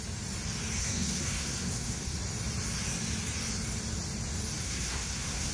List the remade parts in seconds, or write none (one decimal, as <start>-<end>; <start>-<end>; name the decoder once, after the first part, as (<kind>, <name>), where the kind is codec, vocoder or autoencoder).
0.8-2.2 (codec, SNAC); 4.6-5.5